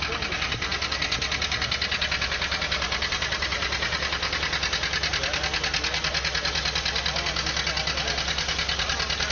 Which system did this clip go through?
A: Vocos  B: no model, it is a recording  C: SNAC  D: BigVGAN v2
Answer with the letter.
B